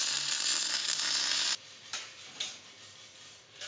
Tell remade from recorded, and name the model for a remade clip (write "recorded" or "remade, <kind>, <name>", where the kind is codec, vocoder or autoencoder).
recorded